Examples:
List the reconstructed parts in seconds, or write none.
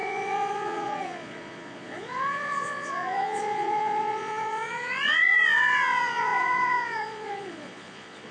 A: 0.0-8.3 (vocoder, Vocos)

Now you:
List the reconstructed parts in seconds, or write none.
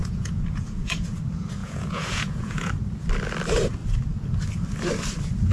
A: 0.0-1.1 (vocoder, Vocos); 1.6-2.7